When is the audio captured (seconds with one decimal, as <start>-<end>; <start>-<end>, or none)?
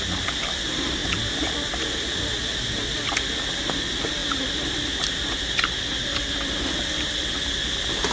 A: 0.0-8.1